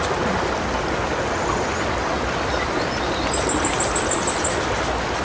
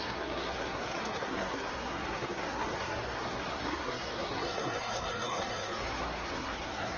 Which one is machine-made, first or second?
second